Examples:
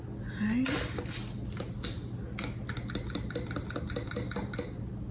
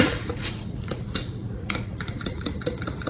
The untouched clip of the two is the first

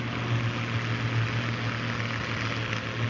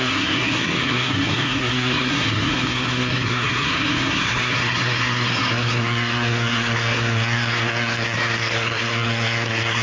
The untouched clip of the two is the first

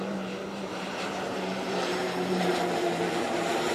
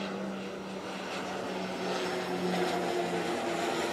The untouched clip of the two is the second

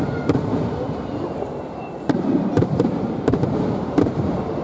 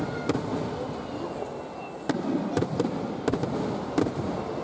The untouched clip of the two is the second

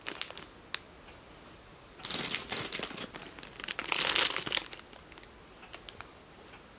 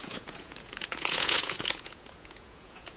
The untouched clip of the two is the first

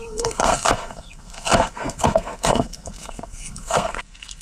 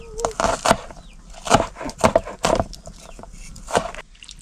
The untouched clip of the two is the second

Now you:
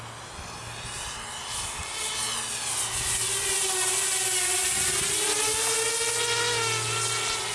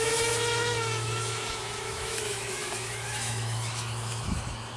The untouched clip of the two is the first